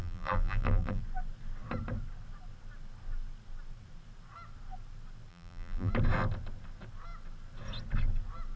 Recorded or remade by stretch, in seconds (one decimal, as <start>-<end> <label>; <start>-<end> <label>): 0.0-1.0 remade; 1.0-5.3 recorded; 5.3-5.9 remade; 5.9-8.6 recorded